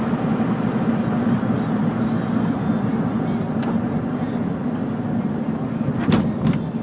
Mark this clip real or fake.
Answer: real